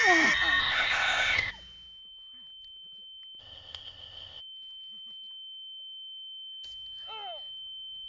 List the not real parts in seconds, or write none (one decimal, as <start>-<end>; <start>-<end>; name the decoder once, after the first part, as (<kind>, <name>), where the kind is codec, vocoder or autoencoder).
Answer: 0.6-1.5 (codec, ZipCodec); 3.4-4.4